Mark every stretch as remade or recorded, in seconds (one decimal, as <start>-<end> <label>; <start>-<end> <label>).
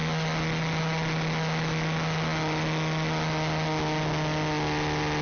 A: 0.0-5.2 recorded